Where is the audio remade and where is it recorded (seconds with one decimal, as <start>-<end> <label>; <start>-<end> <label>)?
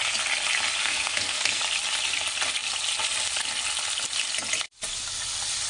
0.0-0.8 recorded; 0.8-1.6 remade; 1.6-5.7 recorded